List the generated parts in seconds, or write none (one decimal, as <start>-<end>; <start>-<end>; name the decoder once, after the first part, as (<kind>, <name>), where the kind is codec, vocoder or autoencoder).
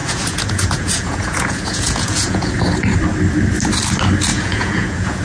0.0-2.5 (vocoder, Vocos); 4.3-5.2